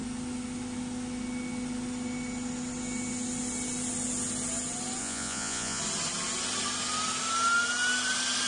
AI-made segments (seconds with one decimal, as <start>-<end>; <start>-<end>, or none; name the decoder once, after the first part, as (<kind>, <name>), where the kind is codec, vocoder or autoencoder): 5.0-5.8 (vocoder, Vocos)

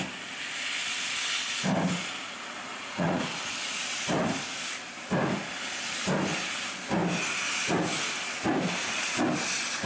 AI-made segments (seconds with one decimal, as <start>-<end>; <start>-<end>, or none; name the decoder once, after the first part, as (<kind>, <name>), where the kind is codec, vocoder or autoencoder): 2.7-3.4 (vocoder, Vocos)

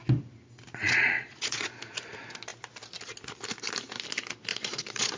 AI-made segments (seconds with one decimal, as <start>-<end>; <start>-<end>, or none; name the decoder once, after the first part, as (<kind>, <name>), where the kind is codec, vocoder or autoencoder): 0.7-1.7 (vocoder, Vocos); 4.5-5.2

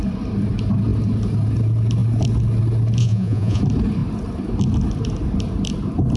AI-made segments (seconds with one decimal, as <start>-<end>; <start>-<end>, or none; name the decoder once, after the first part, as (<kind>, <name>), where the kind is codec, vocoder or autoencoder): 3.0-3.6 (vocoder, Vocos)

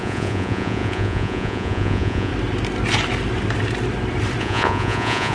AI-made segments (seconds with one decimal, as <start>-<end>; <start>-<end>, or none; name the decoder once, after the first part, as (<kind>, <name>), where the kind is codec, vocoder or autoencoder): 0.0-2.3 (vocoder, Vocos); 4.4-5.3